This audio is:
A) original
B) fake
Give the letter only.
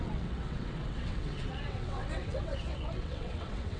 B